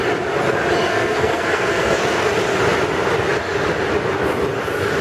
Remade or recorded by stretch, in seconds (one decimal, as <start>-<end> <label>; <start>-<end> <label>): 0.0-0.9 recorded; 0.9-2.3 remade; 2.3-5.0 recorded